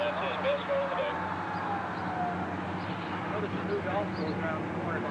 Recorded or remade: recorded